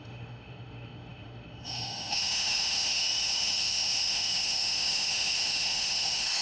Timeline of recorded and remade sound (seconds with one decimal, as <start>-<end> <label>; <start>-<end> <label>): 0.0-6.4 remade